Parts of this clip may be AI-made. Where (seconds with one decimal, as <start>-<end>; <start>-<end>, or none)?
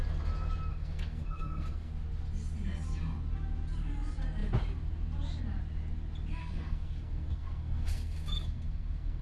0.7-1.9; 6.4-9.2